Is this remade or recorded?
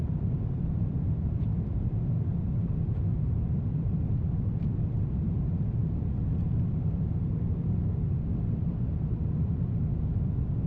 remade